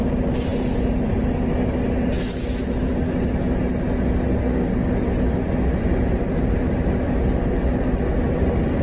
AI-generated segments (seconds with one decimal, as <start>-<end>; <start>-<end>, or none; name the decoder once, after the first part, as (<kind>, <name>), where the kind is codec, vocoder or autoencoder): 4.3-4.9 (codec, SNAC)